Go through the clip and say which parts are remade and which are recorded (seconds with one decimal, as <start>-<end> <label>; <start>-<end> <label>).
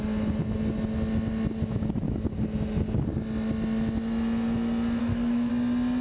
0.0-5.0 recorded; 5.0-5.5 remade; 5.5-6.0 recorded